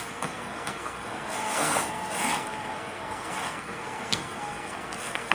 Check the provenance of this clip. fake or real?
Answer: fake